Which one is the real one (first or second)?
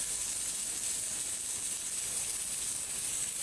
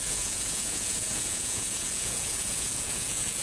first